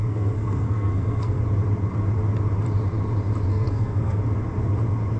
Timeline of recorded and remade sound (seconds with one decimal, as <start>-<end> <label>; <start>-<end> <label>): 0.0-1.4 remade; 1.4-3.5 recorded; 3.5-4.2 remade; 4.2-5.2 recorded